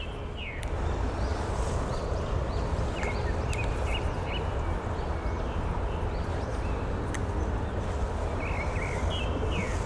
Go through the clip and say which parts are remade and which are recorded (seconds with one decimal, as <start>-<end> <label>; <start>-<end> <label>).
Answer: 0.0-9.9 recorded

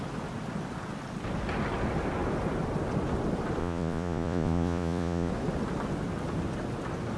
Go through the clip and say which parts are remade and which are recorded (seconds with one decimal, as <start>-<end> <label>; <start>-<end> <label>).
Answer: 0.0-3.6 recorded; 3.6-5.3 remade; 5.3-7.2 recorded

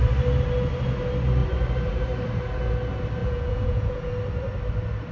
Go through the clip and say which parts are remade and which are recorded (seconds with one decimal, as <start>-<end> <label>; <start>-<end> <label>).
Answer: 0.0-3.2 recorded; 3.2-4.1 remade; 4.1-5.1 recorded

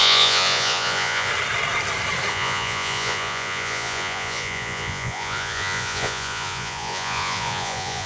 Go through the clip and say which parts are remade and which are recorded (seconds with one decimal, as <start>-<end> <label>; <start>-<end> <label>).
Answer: 0.0-1.3 remade; 1.3-2.3 recorded; 2.3-8.1 remade

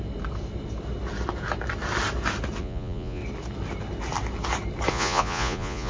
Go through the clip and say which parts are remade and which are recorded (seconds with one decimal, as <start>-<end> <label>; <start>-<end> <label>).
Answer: 0.0-2.6 recorded; 2.6-3.2 remade; 3.2-4.9 recorded; 4.9-5.9 remade

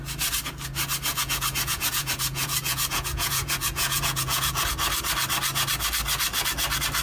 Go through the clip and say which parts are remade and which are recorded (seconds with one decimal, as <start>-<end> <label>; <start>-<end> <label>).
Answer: 0.0-1.1 recorded; 1.1-4.6 remade; 4.6-7.0 recorded

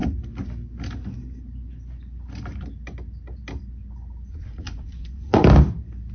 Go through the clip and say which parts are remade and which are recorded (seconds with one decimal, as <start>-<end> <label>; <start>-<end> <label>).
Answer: 0.0-4.3 recorded; 4.3-5.4 remade; 5.4-6.1 recorded

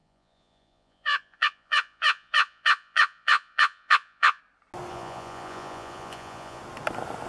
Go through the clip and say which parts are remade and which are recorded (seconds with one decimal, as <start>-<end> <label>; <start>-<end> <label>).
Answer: 0.0-4.4 remade; 4.4-4.9 recorded; 4.9-6.6 remade; 6.6-7.3 recorded